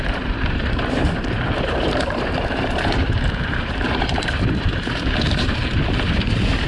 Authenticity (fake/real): fake